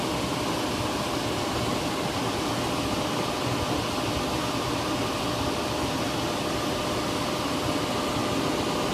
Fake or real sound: real